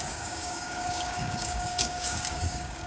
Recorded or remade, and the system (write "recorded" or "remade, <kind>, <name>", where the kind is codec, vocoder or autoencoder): remade, codec, DAC